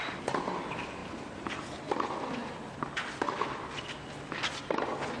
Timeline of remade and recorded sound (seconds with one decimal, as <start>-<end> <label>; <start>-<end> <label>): 0.0-5.2 recorded